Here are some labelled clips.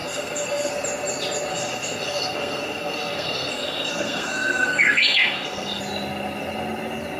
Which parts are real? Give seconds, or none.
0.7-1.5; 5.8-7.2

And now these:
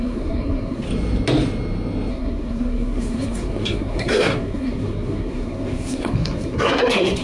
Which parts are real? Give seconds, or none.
0.9-2.1

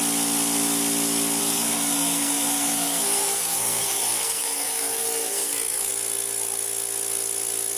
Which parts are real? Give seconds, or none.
0.0-1.4; 5.9-7.8

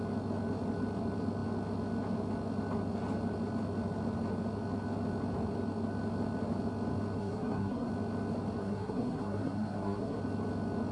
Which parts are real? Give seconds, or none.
0.0-7.2; 7.9-8.6; 10.2-10.9

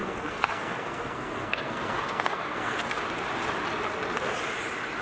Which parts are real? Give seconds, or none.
3.0-5.0

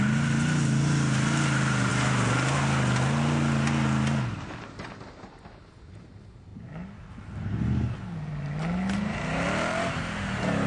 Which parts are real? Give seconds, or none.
0.0-10.7

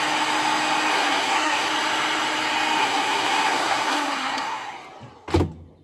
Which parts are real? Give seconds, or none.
0.0-0.9; 1.7-2.8; 4.7-5.8